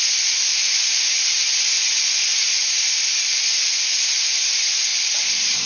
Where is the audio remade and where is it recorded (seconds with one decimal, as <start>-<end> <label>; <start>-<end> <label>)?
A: 0.0-5.7 recorded